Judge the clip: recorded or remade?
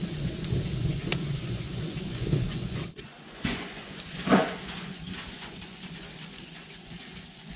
remade